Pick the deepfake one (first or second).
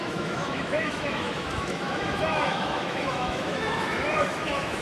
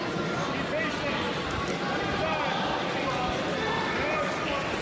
first